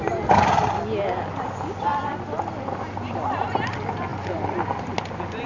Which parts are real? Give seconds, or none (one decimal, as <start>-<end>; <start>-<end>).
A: 0.0-5.5